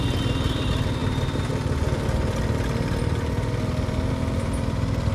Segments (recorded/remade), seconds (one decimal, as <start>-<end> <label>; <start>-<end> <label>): 0.0-5.1 recorded